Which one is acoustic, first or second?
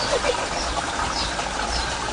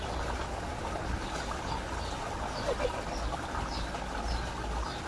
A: second